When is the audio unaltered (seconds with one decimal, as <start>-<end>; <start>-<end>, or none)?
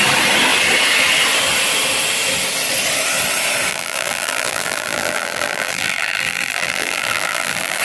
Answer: 0.0-3.7